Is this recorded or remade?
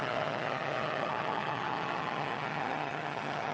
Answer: remade